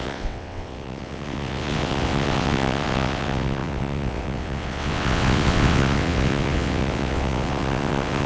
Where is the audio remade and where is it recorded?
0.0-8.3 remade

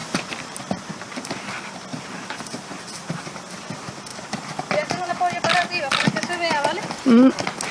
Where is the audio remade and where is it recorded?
0.0-0.7 remade; 0.7-1.9 recorded; 1.9-2.8 remade; 2.8-4.1 recorded; 4.1-5.1 remade; 5.1-7.7 recorded